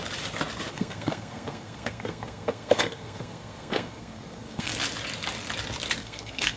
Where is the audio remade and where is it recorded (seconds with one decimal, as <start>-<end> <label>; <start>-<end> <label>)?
0.0-0.7 recorded; 0.7-4.7 remade; 4.7-6.0 recorded; 6.0-6.6 remade